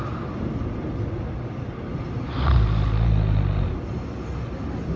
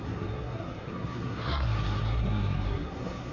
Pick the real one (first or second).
first